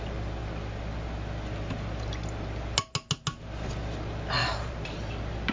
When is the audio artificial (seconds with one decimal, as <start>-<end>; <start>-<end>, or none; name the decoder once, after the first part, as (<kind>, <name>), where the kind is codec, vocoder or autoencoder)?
4.4-5.1 (vocoder, BigVGAN v2)